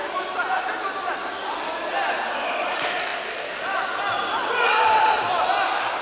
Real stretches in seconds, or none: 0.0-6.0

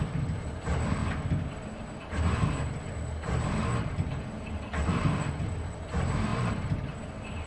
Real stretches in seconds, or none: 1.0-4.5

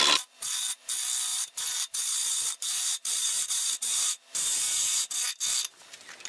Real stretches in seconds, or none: 0.0-1.3; 5.1-6.3

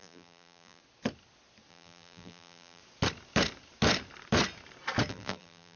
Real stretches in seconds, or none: 0.8-1.7; 2.8-5.1

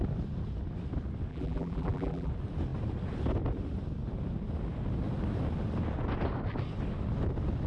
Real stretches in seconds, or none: 0.0-1.3; 2.3-7.7